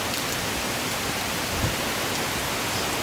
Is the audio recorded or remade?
recorded